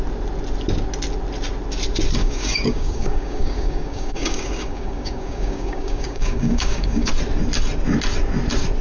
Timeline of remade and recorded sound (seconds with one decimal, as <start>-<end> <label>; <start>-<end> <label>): 0.0-2.2 recorded; 2.2-7.1 remade; 7.1-8.8 recorded